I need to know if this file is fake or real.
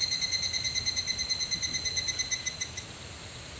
real